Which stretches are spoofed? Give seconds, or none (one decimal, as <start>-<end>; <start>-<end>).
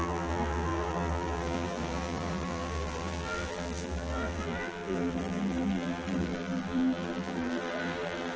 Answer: 0.0-8.4